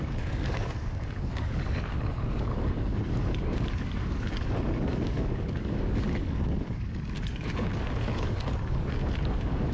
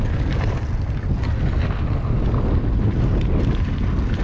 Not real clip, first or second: first